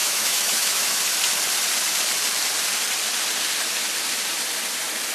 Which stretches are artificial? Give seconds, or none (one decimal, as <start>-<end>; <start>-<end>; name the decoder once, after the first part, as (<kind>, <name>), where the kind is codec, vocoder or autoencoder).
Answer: 0.0-1.0 (autoencoder, DAC-VAE)